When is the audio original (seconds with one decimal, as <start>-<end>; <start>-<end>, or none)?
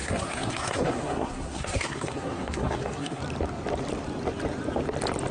3.2-5.3